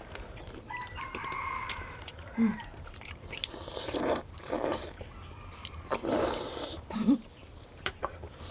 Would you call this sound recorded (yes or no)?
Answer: no